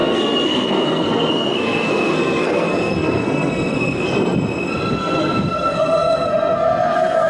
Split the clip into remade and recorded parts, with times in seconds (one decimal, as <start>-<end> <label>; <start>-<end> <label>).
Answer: 0.0-4.1 remade; 4.1-4.9 recorded; 4.9-7.3 remade